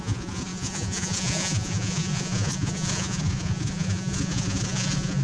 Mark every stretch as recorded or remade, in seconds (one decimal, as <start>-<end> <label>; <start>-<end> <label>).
0.0-5.2 remade